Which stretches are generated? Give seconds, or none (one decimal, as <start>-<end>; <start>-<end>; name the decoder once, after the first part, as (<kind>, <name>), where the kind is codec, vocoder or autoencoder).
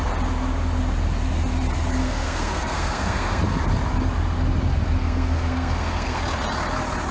2.0-3.4 (codec, SNAC); 5.0-6.2